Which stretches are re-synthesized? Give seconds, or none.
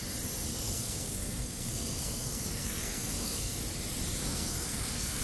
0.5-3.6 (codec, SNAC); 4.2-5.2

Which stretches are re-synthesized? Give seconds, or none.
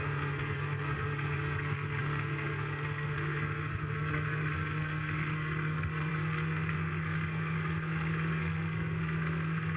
0.0-9.8 (codec, SNAC)